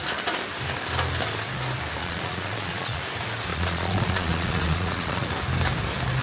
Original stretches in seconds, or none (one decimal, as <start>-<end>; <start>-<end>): 0.0-2.0; 3.0-3.5; 5.3-6.2